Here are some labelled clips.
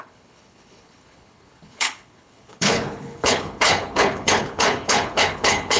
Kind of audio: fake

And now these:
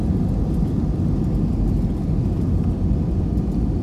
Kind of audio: real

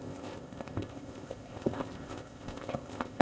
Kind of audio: fake